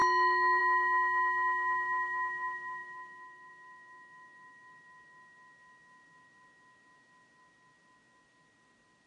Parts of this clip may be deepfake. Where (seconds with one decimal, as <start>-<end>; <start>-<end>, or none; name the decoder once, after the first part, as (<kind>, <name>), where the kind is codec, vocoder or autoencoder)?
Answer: none

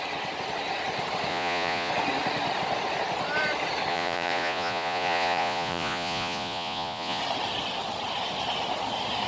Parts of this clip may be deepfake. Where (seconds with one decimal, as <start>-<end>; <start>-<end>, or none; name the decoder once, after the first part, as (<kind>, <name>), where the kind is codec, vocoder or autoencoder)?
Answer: 1.3-1.9 (vocoder, Vocos); 3.9-7.2

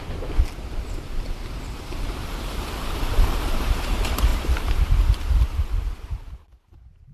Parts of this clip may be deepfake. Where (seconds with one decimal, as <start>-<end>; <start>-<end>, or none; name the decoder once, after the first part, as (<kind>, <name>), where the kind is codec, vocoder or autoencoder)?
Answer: 4.3-5.9 (vocoder, BigVGAN v2)

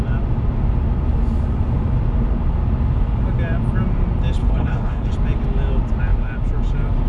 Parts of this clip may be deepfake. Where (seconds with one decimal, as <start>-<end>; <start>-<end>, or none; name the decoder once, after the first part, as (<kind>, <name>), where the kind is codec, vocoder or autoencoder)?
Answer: 4.4-5.1 (codec, HILCodec)

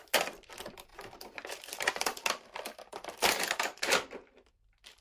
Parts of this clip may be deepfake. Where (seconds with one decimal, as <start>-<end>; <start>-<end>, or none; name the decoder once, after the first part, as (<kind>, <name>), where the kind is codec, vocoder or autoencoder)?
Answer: 0.0-5.0 (vocoder, BigVGAN v2)

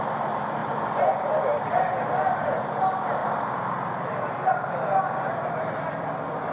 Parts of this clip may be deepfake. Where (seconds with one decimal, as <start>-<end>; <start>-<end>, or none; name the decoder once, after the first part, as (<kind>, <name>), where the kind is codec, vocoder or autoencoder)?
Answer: 0.6-1.2 (vocoder, Vocos)

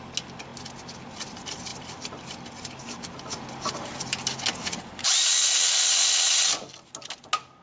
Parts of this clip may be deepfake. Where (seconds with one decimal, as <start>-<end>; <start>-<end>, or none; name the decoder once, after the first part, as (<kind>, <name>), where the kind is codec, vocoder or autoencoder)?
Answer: none

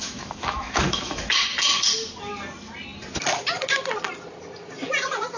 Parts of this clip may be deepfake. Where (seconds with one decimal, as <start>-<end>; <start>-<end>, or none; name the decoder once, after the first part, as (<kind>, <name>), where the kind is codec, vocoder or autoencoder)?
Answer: 0.0-1.3 (autoencoder, DAC-VAE)